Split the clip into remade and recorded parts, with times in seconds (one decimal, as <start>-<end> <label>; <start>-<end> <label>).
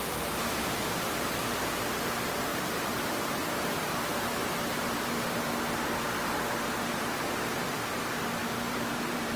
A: 0.0-2.5 recorded; 2.5-4.0 remade; 4.0-8.4 recorded; 8.4-9.4 remade